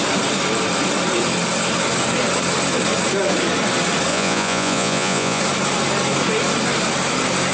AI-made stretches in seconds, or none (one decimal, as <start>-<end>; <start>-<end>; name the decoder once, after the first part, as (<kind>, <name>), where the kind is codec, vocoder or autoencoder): 4.1-5.4 (vocoder, Vocos)